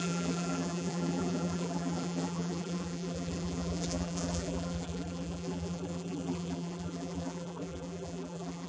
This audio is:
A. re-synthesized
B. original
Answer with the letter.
A